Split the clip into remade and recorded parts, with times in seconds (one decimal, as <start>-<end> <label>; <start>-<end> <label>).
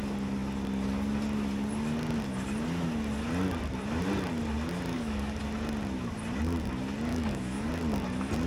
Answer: 0.0-4.9 recorded; 4.9-5.4 remade; 5.4-7.1 recorded; 7.1-7.7 remade; 7.7-8.5 recorded